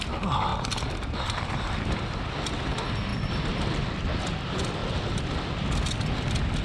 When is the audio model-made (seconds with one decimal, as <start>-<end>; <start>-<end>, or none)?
0.5-1.5